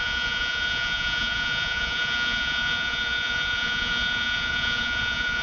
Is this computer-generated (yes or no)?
yes